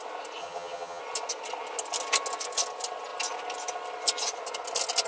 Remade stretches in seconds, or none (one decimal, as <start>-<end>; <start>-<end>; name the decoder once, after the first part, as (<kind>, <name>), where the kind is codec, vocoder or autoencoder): 0.4-1.0 (vocoder, HiFi-GAN)